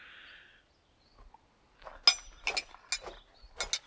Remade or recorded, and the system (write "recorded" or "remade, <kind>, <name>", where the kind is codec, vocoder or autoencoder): recorded